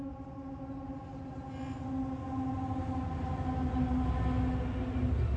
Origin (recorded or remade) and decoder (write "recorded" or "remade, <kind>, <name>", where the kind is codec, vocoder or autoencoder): recorded